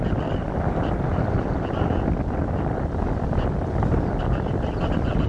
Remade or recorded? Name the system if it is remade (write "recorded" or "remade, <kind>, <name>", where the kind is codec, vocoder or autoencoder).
recorded